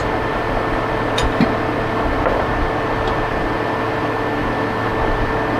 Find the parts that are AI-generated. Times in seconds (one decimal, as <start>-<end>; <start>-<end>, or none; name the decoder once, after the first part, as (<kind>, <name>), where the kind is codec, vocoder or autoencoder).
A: none